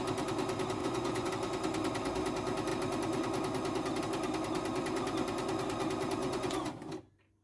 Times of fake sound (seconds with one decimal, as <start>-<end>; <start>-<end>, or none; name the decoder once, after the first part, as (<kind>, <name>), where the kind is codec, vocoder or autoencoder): 0.8-1.3 (vocoder, Vocos); 6.2-6.7